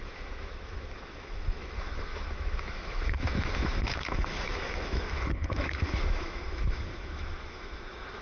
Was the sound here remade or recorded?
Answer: remade